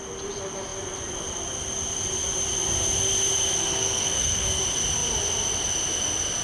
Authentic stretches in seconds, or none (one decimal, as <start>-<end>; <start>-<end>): 0.0-3.6; 4.6-6.4